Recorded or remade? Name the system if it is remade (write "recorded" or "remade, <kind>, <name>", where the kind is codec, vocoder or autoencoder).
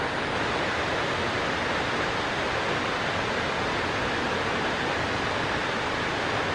recorded